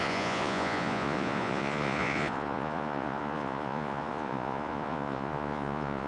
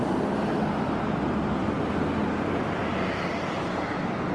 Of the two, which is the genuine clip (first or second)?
second